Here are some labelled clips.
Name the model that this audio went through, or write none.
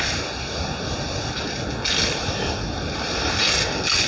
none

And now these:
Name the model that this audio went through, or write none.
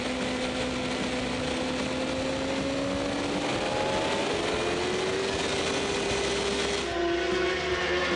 none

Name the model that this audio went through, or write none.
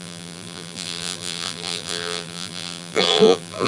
vocoder, BigVGAN v2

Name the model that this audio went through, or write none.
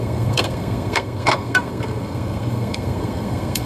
codec, SNAC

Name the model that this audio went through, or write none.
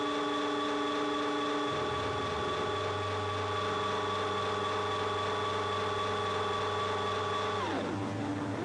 none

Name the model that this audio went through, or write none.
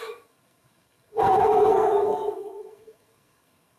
codec, SNAC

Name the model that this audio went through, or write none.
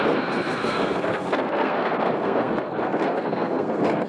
codec, SNAC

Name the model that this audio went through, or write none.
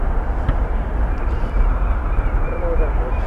none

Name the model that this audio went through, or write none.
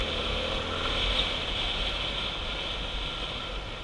none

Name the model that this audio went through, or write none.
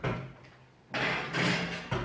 none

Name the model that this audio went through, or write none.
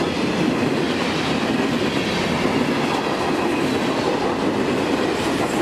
none